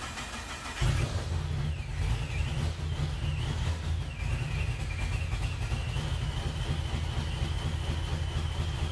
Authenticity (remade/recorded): recorded